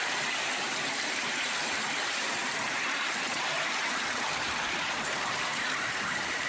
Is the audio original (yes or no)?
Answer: no